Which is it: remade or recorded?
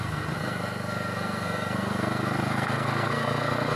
remade